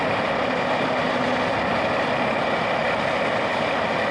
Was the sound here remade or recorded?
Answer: recorded